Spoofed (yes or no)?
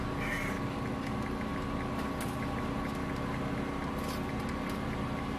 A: no